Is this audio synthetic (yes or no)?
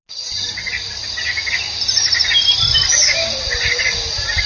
no